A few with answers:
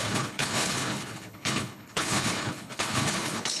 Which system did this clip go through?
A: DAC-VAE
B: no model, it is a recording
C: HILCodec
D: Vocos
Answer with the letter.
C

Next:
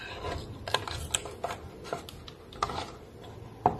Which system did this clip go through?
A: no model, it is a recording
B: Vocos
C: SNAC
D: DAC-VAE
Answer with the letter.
A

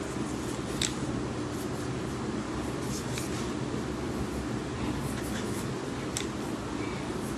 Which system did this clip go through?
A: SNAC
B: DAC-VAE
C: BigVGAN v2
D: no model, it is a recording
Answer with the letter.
D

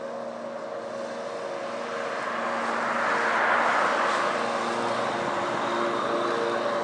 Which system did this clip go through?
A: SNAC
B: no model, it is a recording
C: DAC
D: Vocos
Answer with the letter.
B